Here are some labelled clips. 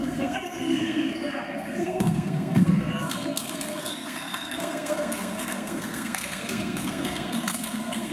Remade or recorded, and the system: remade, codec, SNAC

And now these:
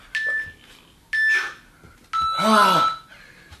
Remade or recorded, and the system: recorded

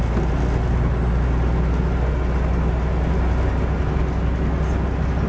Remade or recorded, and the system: recorded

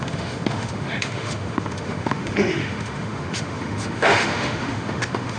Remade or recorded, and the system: remade, autoencoder, DAC-VAE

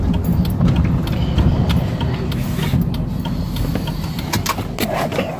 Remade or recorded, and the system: recorded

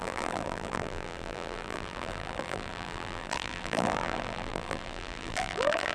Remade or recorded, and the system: remade, vocoder, BigVGAN v2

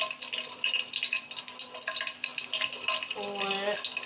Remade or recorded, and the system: recorded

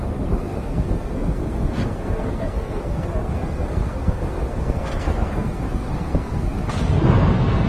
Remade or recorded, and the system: remade, codec, SNAC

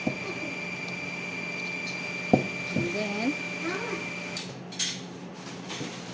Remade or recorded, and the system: recorded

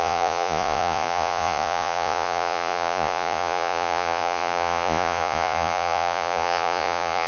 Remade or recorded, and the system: remade, vocoder, Vocos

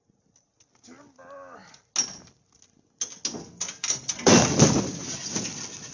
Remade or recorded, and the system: recorded